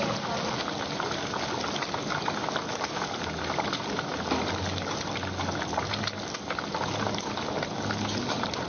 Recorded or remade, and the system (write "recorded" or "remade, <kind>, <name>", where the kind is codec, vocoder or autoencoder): recorded